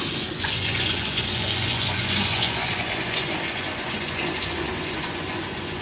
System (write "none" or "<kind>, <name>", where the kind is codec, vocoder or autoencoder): vocoder, Vocos